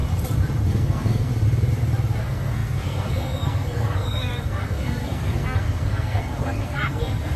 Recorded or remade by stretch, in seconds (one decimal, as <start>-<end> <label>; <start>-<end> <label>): 0.0-0.7 recorded; 0.7-1.3 remade; 1.3-2.2 recorded; 2.2-7.4 remade